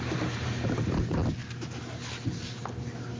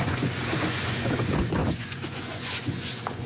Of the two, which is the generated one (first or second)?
second